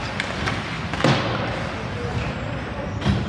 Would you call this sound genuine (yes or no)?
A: yes